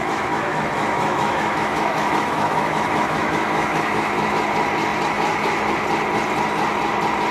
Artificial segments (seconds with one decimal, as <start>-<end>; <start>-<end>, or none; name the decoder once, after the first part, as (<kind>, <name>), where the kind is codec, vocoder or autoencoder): 0.0-4.4 (autoencoder, DAC-VAE)